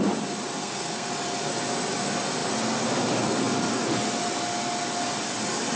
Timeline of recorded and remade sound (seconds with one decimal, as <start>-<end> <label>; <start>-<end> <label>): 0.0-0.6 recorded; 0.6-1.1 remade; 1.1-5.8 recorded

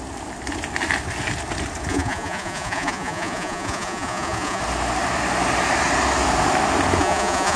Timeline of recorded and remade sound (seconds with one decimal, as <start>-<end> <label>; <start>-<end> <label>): 0.0-1.9 recorded; 1.9-4.6 remade; 4.6-7.0 recorded; 7.0-7.6 remade

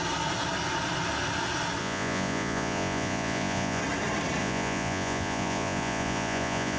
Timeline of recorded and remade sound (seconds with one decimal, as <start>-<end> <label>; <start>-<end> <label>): 0.0-1.8 recorded; 1.8-3.8 remade; 3.8-4.4 recorded; 4.4-6.8 remade

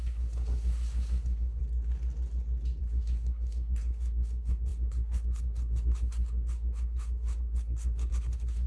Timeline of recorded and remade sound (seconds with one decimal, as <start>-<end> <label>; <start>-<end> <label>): 0.0-1.6 remade; 1.6-2.8 recorded; 2.8-8.7 remade

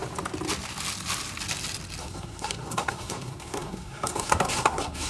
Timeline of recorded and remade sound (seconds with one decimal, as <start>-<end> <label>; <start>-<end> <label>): 0.0-2.0 recorded; 2.0-5.1 remade

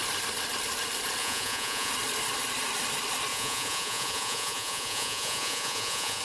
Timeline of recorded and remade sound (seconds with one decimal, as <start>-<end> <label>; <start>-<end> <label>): 0.0-1.2 recorded; 1.2-1.9 remade; 1.9-3.3 recorded; 3.3-6.2 remade

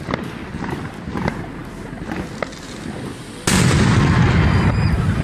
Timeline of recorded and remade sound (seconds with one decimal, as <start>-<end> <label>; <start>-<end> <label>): 0.0-1.6 remade; 1.6-4.7 recorded; 4.7-5.2 remade

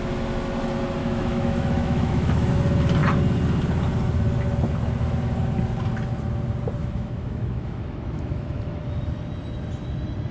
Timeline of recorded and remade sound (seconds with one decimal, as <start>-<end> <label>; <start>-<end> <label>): 0.0-1.0 recorded; 1.0-2.5 remade; 2.5-6.8 recorded; 6.8-8.8 remade; 8.8-10.3 recorded